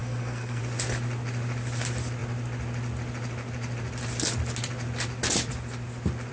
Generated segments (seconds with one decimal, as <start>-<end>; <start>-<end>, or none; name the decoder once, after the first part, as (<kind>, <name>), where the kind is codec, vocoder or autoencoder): 0.0-0.6 (codec, SNAC)